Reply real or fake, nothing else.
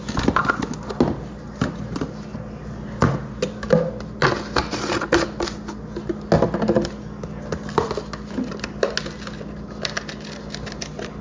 real